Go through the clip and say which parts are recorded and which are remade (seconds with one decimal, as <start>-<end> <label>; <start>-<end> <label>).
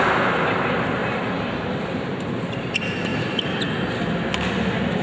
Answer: 0.0-1.0 recorded; 1.0-1.6 remade; 1.6-3.1 recorded; 3.1-3.6 remade; 3.6-5.0 recorded